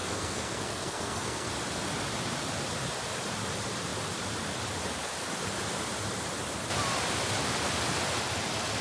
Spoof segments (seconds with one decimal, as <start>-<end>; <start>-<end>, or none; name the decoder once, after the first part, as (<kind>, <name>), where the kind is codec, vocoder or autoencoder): 0.0-1.5 (codec, SNAC)